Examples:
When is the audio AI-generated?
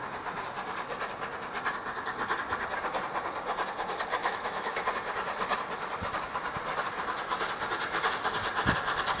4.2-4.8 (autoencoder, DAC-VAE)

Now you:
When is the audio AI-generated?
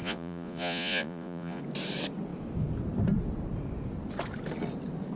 0.0-1.6 (vocoder, Vocos)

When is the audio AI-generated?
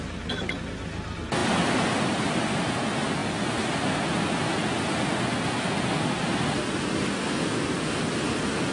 none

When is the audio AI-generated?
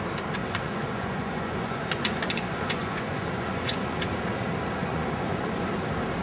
0.4-4.1 (vocoder, Vocos); 4.8-5.7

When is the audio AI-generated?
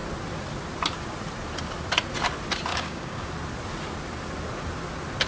2.7-3.3 (codec, DAC)